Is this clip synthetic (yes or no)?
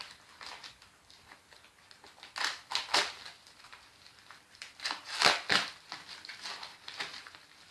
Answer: no